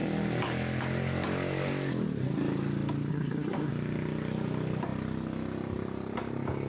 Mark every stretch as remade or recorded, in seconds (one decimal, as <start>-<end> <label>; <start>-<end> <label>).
0.0-3.1 recorded; 3.1-3.7 remade; 3.7-6.7 recorded